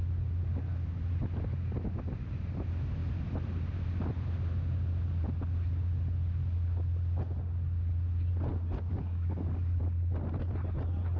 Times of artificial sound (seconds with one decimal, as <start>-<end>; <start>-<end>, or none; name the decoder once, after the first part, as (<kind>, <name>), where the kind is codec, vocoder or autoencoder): 8.9-9.8 (codec, DAC)